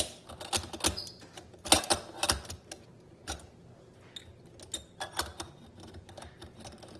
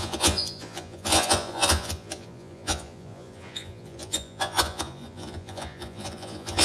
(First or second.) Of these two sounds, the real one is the first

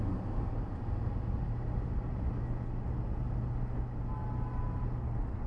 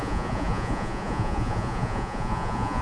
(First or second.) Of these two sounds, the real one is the first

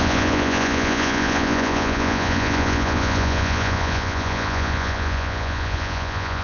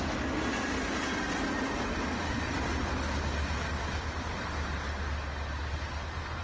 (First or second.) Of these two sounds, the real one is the second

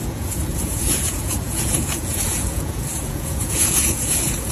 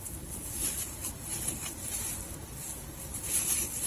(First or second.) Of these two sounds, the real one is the second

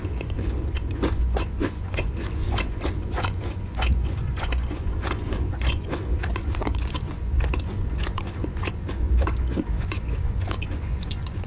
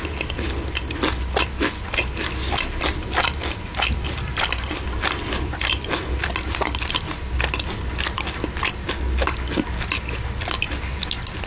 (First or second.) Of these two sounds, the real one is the second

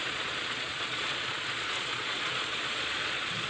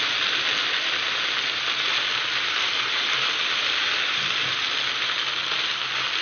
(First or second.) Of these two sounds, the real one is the second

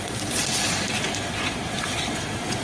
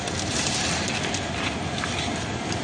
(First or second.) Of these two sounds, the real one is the second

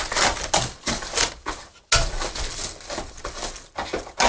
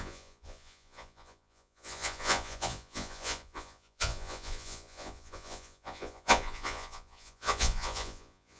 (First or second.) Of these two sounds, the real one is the first